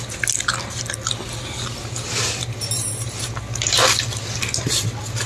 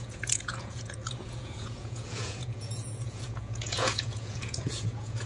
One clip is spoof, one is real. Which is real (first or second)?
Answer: first